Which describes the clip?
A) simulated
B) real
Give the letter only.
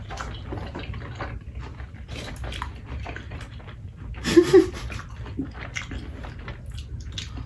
B